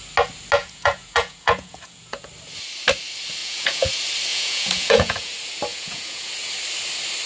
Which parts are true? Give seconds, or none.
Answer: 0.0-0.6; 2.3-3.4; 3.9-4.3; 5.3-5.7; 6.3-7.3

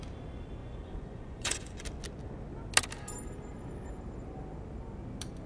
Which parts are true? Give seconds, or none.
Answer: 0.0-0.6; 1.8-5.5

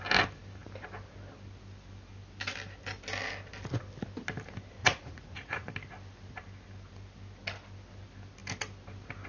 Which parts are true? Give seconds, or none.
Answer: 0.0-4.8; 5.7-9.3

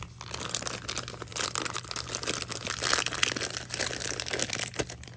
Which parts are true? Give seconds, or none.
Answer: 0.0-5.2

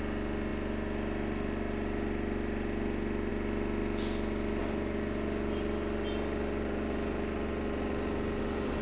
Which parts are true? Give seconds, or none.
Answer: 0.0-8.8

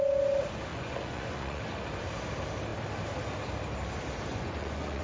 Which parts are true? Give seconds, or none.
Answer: 0.0-0.7; 1.6-4.3